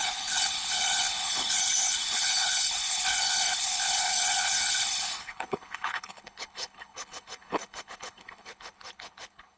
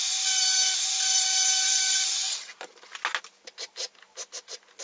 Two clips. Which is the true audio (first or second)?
second